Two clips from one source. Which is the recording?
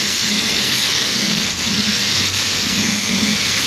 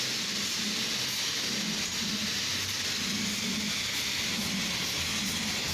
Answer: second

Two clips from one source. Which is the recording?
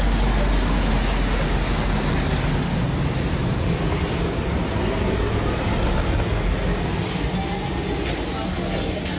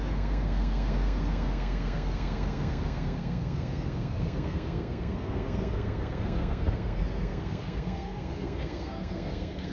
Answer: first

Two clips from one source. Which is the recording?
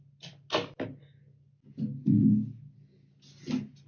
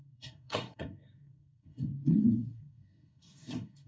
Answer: first